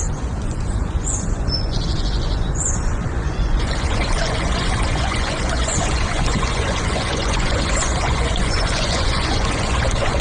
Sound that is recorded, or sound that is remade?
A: remade